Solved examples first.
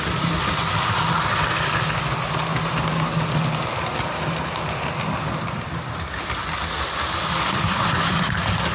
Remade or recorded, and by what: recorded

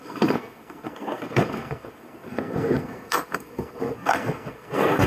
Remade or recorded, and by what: remade, codec, SNAC